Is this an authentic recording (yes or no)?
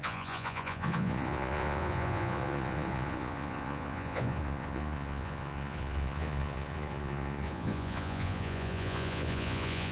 no